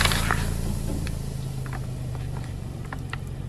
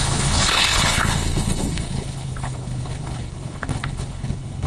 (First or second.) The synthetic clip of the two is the second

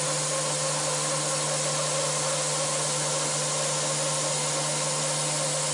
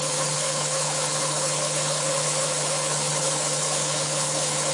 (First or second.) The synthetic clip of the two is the second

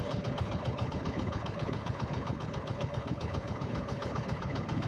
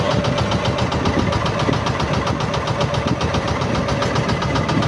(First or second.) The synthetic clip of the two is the first